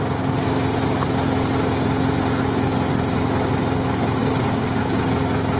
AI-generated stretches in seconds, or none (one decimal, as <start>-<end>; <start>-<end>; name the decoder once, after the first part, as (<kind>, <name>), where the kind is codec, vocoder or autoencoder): 4.2-5.0 (codec, DAC)

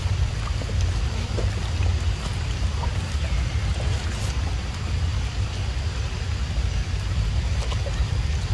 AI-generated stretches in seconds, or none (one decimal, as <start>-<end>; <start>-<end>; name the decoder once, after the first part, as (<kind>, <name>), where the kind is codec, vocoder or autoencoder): 0.0-8.5 (vocoder, BigVGAN v2)

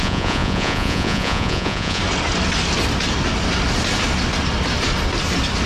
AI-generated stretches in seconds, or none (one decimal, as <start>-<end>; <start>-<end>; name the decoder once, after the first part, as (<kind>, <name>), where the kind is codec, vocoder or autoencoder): 0.0-2.0 (vocoder, Vocos)

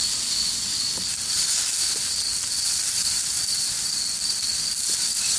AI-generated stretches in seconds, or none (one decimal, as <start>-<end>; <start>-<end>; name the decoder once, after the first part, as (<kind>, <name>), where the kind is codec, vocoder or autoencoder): none